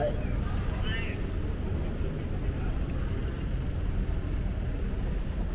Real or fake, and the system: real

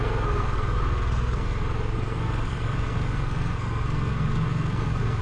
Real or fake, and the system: fake, codec, SNAC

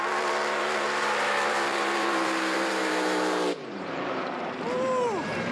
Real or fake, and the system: fake, vocoder, BigVGAN v2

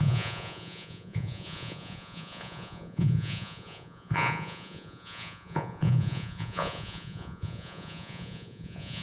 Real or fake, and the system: fake, vocoder, Vocos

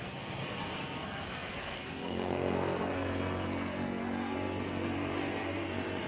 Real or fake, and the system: fake, codec, SNAC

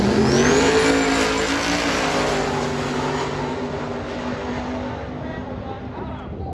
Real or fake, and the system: real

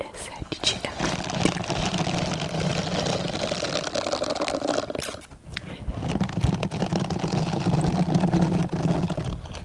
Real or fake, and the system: real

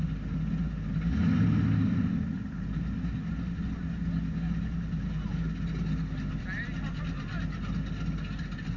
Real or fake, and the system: real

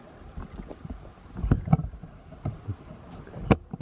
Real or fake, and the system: real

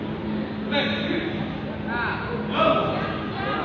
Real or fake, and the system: real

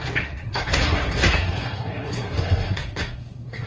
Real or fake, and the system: fake, codec, SNAC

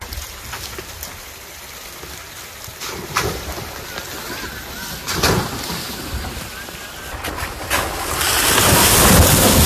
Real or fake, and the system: real